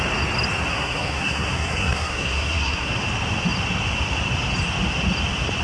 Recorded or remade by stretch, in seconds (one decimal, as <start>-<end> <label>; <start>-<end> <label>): 0.0-0.7 recorded; 0.7-2.9 remade; 2.9-5.6 recorded